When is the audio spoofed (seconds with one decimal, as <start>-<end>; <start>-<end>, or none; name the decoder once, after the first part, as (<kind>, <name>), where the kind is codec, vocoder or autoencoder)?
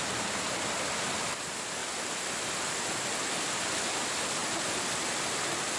none